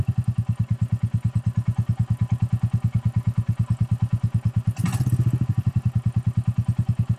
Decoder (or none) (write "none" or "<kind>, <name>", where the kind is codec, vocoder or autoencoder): none